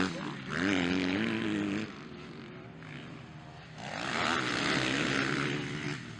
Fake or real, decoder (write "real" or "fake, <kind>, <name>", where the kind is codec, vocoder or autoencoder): real